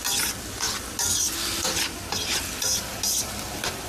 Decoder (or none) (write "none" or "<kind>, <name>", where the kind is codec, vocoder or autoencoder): none